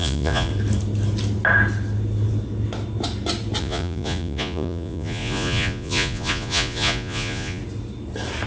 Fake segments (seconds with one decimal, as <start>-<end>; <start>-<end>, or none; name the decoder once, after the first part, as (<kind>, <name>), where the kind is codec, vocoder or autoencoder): 0.0-0.5 (vocoder, Vocos); 3.6-7.6